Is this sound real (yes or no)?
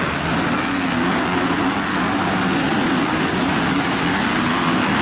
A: yes